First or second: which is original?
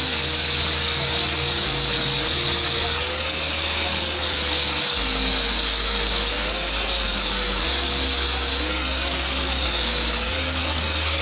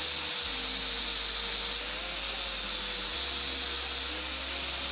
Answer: second